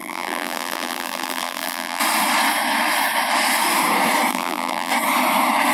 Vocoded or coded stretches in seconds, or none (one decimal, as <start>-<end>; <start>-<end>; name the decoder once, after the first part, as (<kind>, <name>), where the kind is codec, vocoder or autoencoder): 0.0-2.0 (vocoder, BigVGAN v2); 4.3-4.9